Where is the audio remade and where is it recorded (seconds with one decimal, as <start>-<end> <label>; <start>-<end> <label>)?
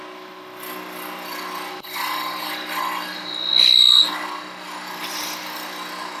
0.0-6.2 recorded